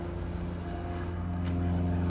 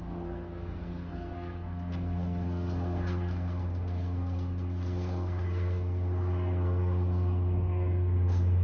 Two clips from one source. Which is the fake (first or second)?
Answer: second